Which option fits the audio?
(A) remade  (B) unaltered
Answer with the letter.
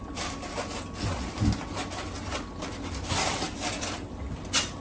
B